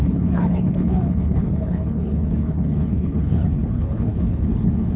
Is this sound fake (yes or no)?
yes